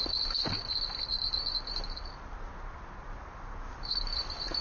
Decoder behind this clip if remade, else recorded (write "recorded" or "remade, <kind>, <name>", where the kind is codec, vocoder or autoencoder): recorded